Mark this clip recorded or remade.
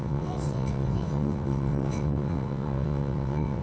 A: remade